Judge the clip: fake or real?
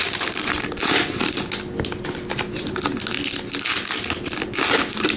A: real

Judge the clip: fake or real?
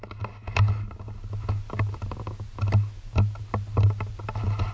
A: real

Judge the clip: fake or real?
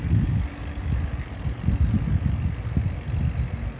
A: real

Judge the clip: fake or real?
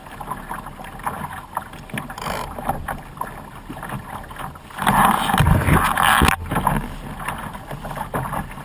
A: real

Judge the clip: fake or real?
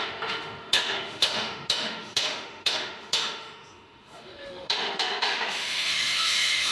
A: fake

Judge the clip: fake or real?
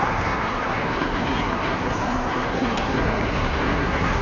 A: fake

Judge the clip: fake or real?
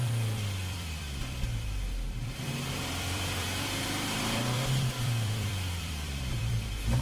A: fake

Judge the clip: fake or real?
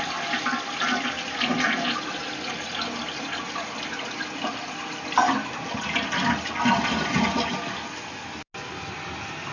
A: real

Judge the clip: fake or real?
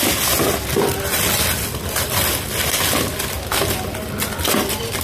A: real